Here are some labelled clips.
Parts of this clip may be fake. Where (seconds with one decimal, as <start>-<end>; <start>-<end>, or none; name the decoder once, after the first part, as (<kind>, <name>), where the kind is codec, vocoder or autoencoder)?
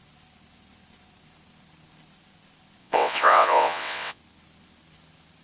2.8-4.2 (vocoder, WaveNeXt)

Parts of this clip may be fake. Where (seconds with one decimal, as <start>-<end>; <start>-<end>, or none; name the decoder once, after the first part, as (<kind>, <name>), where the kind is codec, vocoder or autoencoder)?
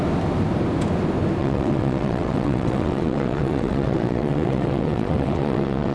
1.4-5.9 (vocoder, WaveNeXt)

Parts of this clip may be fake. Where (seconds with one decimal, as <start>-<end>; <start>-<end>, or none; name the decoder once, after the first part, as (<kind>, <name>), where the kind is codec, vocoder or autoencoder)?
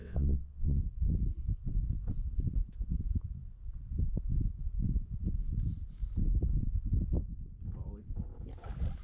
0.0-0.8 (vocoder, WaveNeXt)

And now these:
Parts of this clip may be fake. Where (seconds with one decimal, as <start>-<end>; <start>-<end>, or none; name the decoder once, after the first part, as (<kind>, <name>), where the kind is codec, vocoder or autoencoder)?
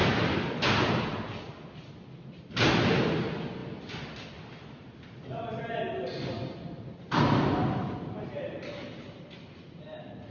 none